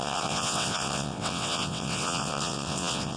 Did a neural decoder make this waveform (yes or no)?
yes